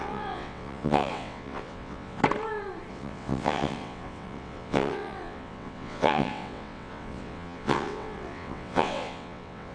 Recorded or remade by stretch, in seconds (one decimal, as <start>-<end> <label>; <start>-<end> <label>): 0.0-2.2 remade; 2.2-2.9 recorded; 2.9-9.7 remade